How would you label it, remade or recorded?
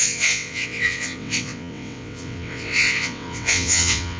remade